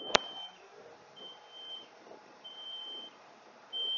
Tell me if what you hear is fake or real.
fake